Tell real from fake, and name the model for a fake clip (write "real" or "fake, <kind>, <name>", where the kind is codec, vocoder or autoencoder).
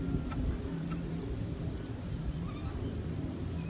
fake, vocoder, BigVGAN v2